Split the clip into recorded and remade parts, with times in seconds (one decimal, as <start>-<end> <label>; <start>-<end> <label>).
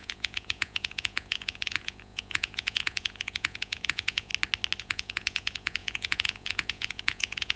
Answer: 0.0-4.3 remade; 4.3-4.8 recorded; 4.8-7.6 remade